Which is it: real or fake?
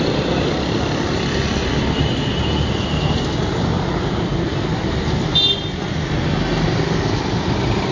real